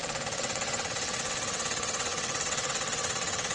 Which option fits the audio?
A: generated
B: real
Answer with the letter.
A